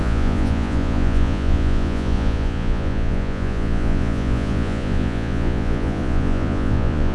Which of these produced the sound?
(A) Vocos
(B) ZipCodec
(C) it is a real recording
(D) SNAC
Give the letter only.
A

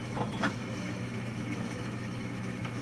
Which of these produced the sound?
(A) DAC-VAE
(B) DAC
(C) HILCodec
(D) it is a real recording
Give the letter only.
A